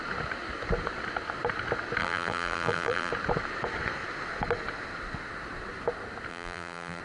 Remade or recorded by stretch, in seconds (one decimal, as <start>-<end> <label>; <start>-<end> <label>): 0.0-2.0 recorded; 2.0-3.1 remade; 3.1-6.3 recorded; 6.3-7.0 remade